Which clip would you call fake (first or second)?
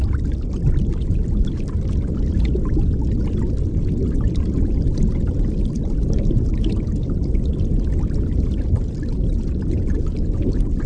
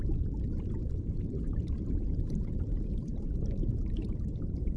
second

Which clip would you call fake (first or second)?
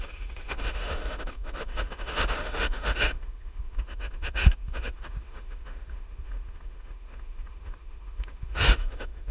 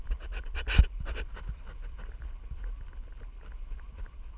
first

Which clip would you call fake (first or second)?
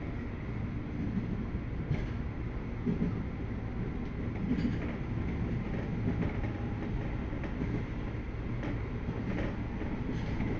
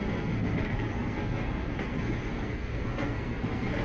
second